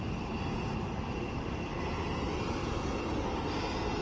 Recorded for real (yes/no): yes